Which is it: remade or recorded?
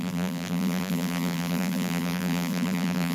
remade